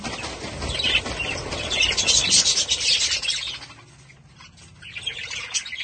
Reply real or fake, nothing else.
real